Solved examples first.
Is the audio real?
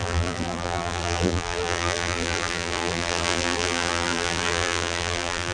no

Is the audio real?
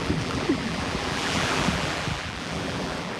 no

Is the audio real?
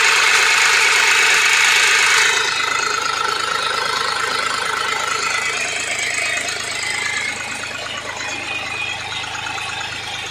yes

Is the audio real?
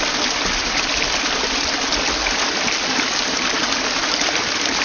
yes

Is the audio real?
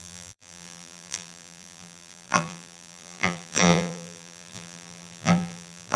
no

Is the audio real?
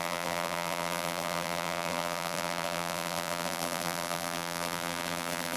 no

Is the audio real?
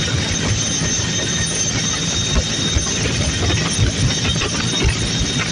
yes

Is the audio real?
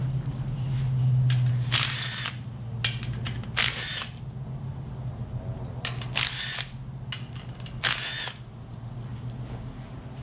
yes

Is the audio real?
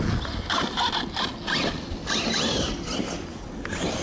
yes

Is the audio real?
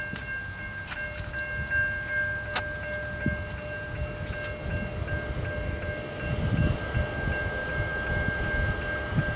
yes